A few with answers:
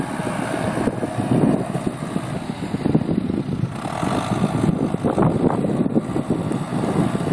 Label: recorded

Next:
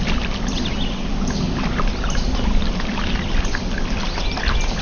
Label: recorded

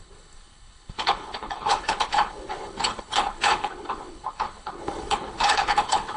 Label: remade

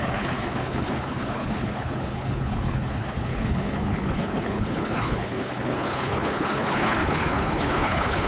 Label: remade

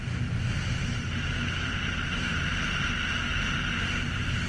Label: recorded